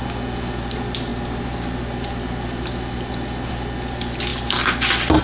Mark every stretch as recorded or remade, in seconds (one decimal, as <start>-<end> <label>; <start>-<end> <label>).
0.0-5.2 recorded